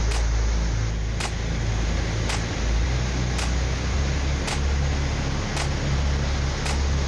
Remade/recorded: recorded